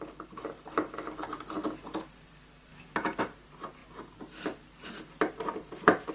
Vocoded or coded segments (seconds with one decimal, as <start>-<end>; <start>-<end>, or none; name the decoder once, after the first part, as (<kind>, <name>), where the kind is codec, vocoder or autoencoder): none